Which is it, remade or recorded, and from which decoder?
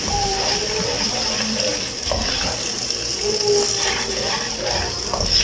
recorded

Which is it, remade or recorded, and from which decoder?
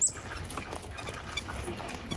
recorded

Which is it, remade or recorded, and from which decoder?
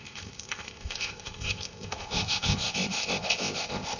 remade, codec, ZipCodec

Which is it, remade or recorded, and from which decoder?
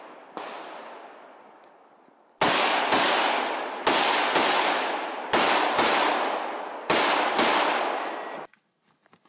recorded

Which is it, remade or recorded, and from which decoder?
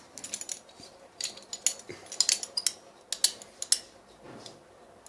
recorded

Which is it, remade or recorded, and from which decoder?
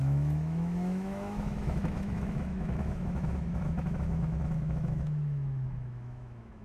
remade, autoencoder, DAC-VAE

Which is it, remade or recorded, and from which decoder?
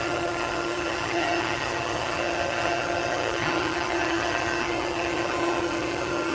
remade, vocoder, HiFi-GAN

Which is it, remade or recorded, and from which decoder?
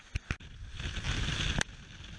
recorded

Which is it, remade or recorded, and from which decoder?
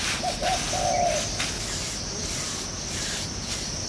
recorded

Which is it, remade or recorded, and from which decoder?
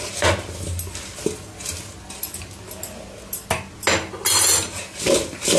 recorded